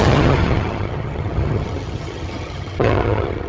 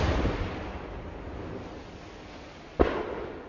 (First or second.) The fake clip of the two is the first